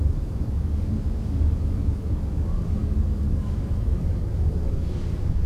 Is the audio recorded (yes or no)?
no